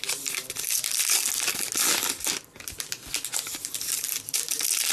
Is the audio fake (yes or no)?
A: no